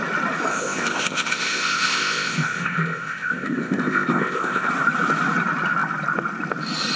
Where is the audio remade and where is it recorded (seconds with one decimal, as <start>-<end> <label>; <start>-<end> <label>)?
0.0-0.5 recorded; 0.5-4.7 remade; 4.7-7.0 recorded